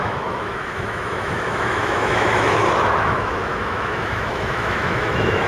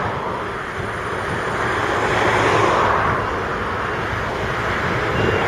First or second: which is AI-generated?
first